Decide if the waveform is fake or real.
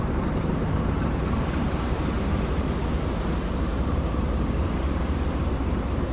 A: fake